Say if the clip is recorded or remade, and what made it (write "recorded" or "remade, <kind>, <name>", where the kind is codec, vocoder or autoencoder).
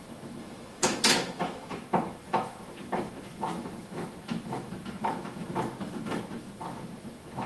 remade, autoencoder, DAC-VAE